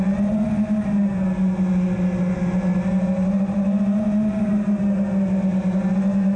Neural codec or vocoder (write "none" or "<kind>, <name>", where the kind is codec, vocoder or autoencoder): none